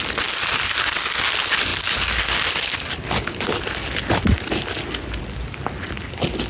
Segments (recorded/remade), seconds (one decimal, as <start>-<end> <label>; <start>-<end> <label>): 0.0-6.5 recorded